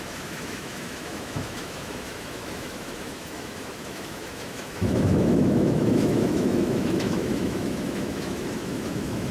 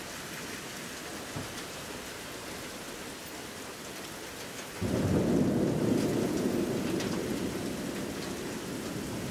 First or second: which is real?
second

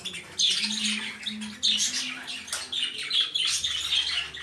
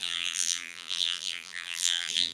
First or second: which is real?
first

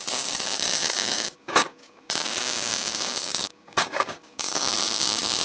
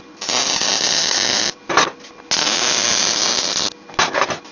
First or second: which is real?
second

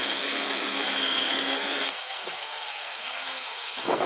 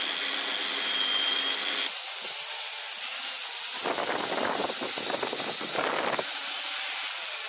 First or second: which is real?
second